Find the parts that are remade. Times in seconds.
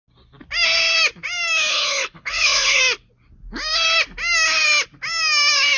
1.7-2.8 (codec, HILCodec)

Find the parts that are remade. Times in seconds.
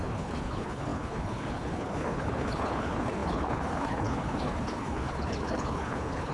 0.0-6.3 (codec, HILCodec)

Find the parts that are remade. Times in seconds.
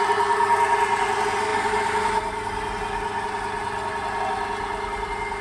none